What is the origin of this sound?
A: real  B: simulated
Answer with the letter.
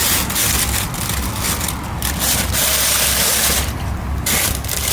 A